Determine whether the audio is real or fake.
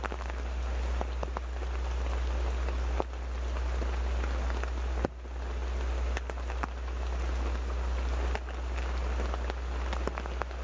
real